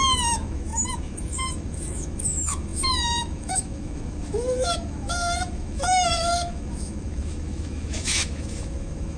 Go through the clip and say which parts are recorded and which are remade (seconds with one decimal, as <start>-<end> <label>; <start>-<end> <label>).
0.0-9.2 remade